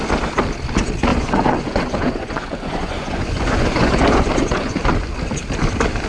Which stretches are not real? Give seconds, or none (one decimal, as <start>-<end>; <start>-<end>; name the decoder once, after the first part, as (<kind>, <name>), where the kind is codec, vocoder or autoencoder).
1.1-4.8 (vocoder, Vocos)